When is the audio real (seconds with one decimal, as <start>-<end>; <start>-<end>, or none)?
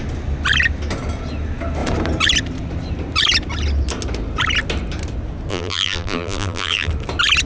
0.0-5.5; 6.9-7.5